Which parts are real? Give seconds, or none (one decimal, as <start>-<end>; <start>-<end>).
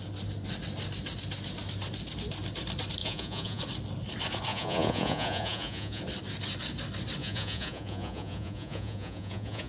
0.0-3.0; 3.6-4.5; 6.0-7.2